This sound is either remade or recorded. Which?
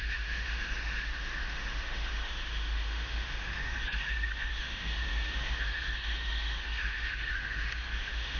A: remade